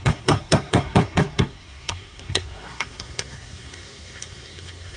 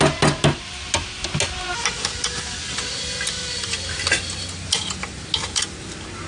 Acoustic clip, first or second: second